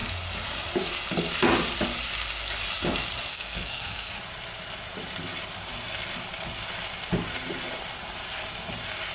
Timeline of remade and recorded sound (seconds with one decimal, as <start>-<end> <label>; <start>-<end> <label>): 0.0-3.3 recorded; 3.3-4.2 remade; 4.2-9.1 recorded